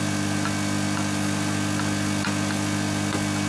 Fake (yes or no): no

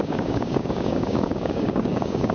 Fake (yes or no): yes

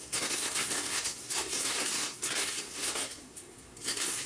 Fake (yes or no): yes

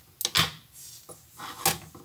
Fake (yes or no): no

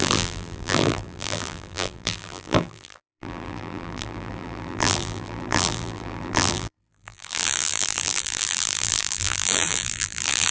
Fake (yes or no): yes